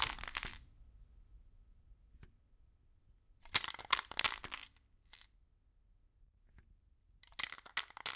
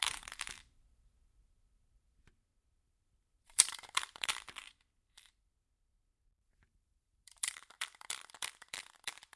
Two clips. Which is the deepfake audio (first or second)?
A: second